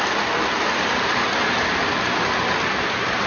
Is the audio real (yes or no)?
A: yes